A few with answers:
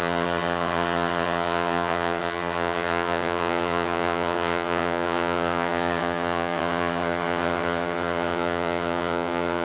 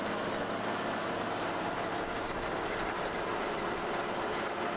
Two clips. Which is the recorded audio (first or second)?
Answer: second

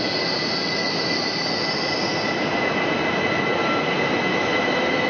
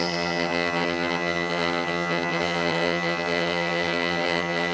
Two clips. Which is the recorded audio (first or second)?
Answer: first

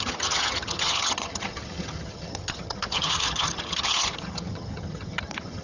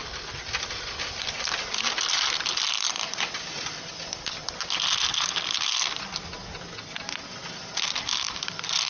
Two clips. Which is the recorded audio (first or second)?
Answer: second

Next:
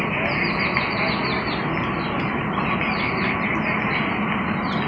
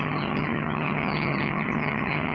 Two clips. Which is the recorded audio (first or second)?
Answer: first